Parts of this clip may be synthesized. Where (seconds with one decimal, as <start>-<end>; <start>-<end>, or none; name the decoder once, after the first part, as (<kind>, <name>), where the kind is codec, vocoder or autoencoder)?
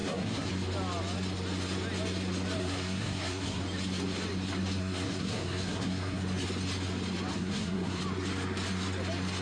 0.0-0.5 (codec, SNAC); 2.6-3.6; 4.8-6.2; 7.3-8.0